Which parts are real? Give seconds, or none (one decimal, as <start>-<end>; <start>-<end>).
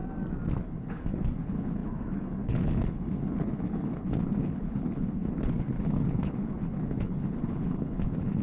0.0-0.6